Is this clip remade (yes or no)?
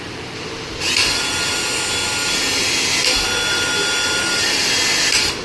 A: no